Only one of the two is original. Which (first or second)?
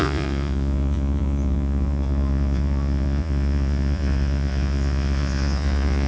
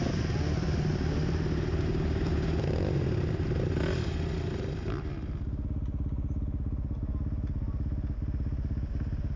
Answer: second